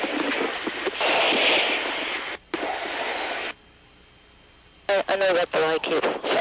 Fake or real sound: real